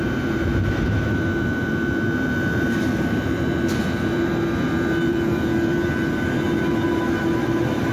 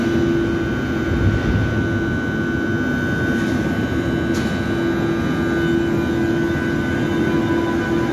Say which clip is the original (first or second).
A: second